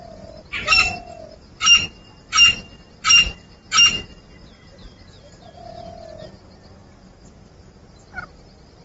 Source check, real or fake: real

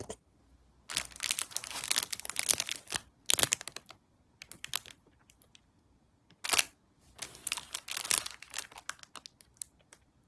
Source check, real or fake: real